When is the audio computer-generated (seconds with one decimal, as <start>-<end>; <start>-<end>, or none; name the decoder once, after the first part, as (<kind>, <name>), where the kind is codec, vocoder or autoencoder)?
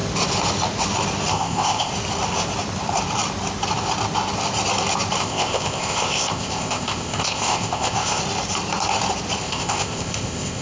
1.3-1.9 (codec, ZipCodec); 5.2-8.2; 9.4-10.6